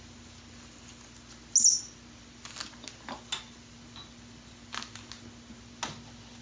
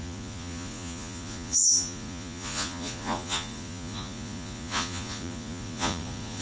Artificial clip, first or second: second